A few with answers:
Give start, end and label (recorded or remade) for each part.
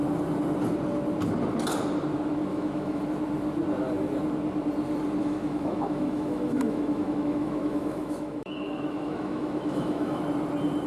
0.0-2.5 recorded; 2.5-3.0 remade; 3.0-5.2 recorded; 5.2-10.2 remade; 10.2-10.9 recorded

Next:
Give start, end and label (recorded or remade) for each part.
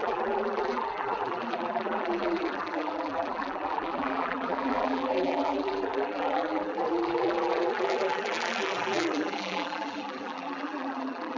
0.0-11.4 remade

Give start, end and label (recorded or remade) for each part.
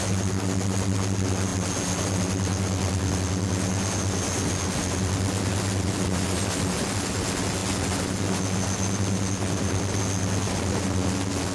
0.0-11.5 recorded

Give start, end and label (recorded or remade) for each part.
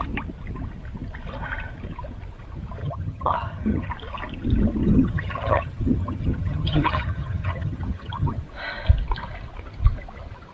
0.0-2.8 recorded; 2.8-3.9 remade; 3.9-4.8 recorded; 4.8-8.4 remade; 8.4-10.5 recorded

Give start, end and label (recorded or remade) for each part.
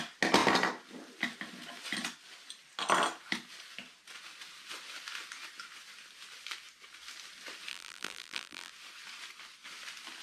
0.0-7.7 recorded; 7.7-8.7 remade; 8.7-10.2 recorded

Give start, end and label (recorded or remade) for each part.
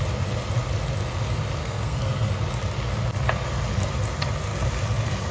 0.0-1.6 recorded; 1.6-2.3 remade; 2.3-5.3 recorded